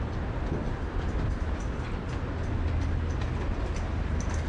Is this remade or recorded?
recorded